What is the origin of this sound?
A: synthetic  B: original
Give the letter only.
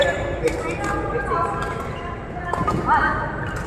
B